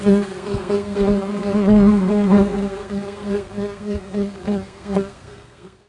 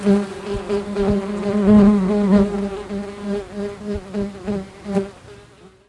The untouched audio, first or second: second